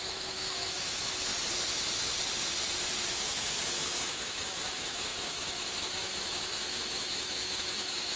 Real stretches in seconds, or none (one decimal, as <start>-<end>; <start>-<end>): 1.3-3.1